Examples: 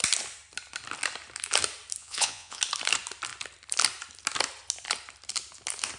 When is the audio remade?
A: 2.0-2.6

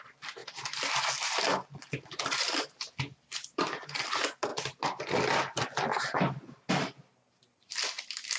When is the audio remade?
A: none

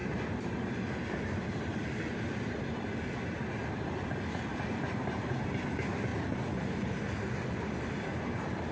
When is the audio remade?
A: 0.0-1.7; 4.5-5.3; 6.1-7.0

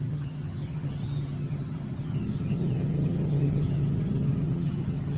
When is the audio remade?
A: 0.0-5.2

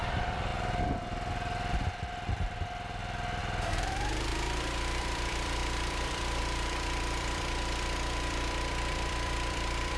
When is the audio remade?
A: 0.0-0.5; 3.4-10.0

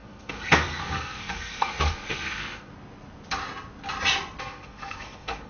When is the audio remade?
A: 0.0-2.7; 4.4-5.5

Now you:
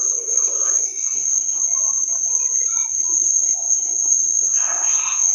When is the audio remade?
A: 0.0-1.6; 3.3-5.3